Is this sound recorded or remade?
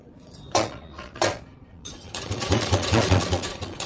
remade